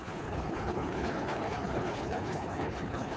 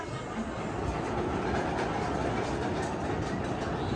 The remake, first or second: first